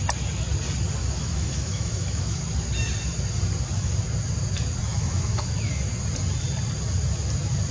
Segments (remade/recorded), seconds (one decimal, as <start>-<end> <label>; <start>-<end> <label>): 0.0-1.0 recorded; 1.0-2.4 remade; 2.4-4.9 recorded; 4.9-5.7 remade; 5.7-7.7 recorded